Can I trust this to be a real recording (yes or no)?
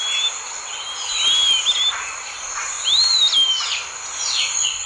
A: yes